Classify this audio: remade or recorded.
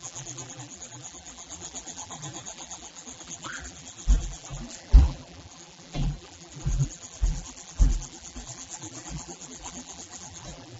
remade